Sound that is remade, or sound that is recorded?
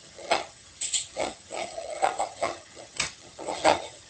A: remade